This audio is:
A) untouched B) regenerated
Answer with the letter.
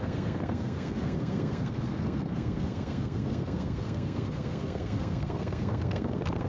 B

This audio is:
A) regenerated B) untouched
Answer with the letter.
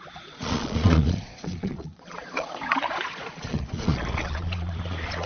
A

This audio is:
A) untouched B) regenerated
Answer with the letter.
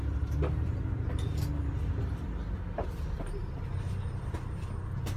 A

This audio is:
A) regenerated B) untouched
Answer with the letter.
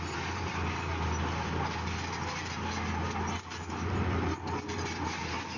B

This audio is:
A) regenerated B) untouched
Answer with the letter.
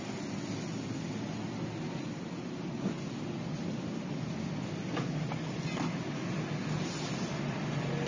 B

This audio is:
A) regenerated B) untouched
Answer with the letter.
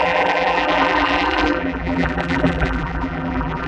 A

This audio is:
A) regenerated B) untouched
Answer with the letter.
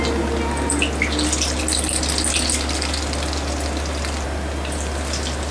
B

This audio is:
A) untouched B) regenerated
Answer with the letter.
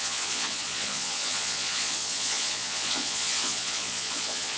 B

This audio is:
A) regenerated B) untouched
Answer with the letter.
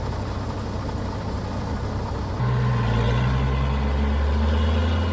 B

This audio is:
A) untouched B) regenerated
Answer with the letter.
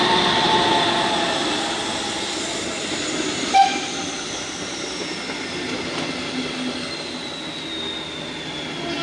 A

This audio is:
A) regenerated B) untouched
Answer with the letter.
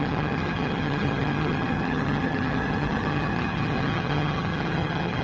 A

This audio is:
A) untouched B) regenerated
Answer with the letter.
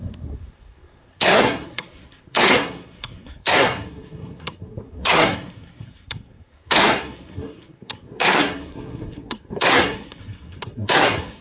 B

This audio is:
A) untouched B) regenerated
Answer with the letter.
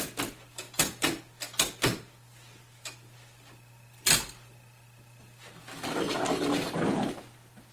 A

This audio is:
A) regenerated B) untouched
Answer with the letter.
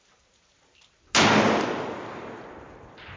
B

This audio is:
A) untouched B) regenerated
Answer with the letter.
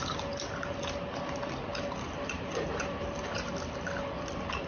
A